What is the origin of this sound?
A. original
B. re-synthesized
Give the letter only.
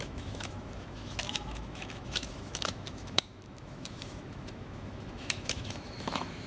B